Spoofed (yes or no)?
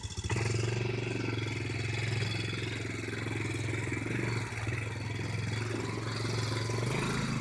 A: no